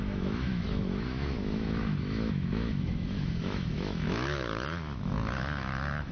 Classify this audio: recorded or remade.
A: remade